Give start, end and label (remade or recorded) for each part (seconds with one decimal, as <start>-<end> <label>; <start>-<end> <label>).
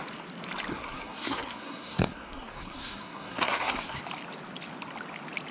0.0-0.7 recorded; 0.7-4.0 remade; 4.0-5.5 recorded